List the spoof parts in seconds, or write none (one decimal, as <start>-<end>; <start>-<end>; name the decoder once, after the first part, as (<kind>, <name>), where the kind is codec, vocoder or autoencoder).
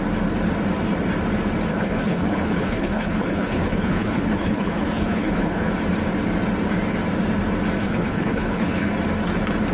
1.7-5.7 (codec, HILCodec); 7.8-8.9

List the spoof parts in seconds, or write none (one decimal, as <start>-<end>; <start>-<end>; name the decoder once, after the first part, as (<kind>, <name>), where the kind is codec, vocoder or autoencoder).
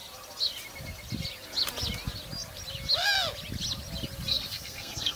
4.3-5.2 (codec, SNAC)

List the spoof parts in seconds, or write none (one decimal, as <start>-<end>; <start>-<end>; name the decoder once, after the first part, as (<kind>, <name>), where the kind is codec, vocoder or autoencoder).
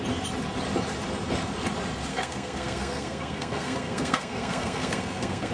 2.1-5.5 (codec, SNAC)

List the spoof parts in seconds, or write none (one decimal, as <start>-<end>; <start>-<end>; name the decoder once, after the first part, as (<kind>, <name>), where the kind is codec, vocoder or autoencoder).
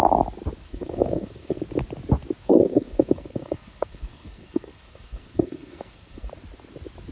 0.6-1.6 (codec, SNAC); 2.4-6.3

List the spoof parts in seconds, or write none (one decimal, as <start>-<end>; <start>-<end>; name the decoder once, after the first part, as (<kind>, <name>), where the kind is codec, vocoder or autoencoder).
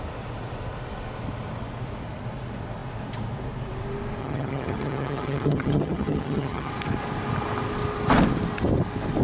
4.2-6.7 (vocoder, HiFi-GAN)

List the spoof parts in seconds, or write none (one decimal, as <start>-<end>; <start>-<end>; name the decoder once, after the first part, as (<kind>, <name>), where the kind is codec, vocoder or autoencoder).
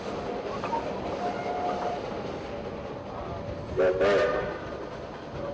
1.4-2.0 (vocoder, BigVGAN v2)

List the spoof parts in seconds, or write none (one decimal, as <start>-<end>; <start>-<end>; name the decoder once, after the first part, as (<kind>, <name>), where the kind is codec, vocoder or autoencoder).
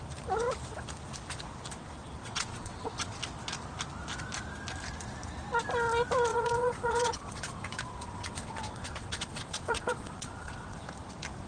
2.2-3.2 (vocoder, WaveNeXt); 6.3-10.8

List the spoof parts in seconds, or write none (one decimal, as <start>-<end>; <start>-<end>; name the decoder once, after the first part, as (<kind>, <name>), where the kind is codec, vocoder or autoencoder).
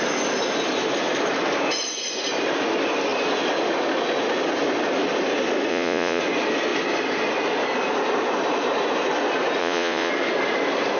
5.7-6.2 (vocoder, Vocos); 9.6-10.1